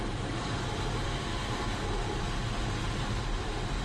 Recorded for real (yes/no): yes